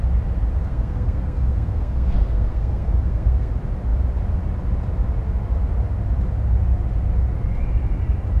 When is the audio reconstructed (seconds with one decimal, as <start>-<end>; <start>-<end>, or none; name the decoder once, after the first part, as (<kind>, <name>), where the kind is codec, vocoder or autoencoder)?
0.6-3.5 (codec, SNAC)